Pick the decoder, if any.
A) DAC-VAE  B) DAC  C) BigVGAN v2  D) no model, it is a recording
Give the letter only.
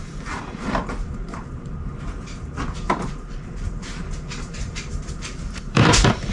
C